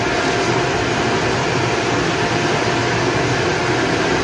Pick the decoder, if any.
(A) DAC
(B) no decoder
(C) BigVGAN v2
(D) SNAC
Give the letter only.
B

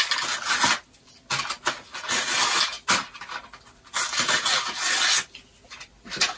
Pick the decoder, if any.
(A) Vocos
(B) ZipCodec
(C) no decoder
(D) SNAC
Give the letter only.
C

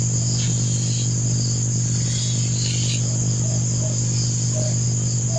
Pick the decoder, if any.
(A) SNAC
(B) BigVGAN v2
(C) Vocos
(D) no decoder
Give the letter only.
D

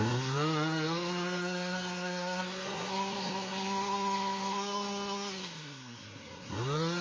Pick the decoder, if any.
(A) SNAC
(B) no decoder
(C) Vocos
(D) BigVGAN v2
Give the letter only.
A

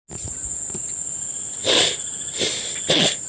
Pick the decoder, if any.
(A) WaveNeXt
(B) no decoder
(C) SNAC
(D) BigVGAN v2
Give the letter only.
B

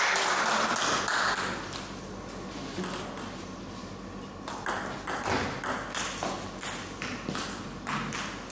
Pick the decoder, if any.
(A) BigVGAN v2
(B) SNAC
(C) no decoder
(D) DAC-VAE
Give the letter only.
C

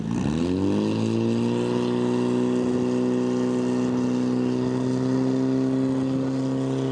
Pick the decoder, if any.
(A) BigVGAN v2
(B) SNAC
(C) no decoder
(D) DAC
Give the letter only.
C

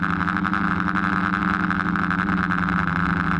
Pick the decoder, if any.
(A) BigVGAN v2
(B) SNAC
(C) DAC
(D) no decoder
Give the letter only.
D